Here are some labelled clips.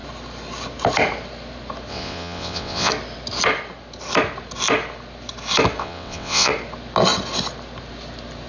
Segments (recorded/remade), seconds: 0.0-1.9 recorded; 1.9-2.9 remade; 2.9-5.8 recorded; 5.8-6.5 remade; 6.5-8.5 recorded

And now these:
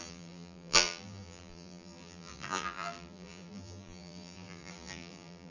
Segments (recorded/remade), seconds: 0.0-5.5 remade